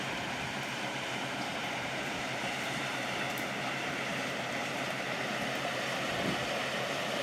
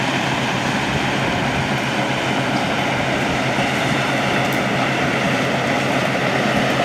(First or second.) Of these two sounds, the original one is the second